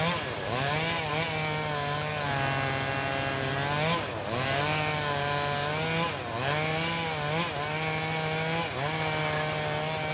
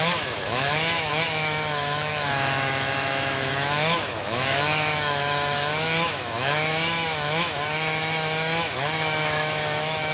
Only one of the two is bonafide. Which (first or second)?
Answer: first